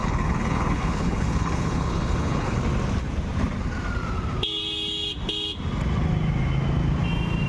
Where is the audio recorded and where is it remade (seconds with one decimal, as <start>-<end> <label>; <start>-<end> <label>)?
0.0-2.6 remade; 2.6-7.5 recorded